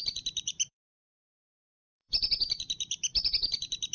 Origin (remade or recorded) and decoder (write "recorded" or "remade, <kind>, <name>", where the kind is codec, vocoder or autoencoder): remade, vocoder, BigVGAN v2